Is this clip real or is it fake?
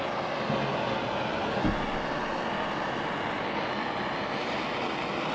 real